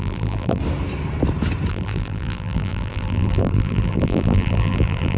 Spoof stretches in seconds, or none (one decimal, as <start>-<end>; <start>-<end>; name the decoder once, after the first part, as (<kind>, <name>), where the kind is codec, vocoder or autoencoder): 0.0-0.6 (vocoder, BigVGAN v2); 1.7-5.2